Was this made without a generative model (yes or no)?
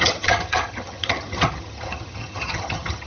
no